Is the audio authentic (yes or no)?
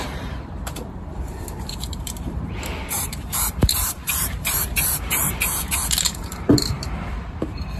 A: no